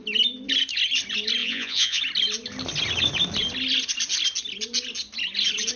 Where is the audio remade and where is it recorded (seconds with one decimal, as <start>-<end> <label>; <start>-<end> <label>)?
0.0-1.4 recorded; 1.4-2.0 remade; 2.0-5.8 recorded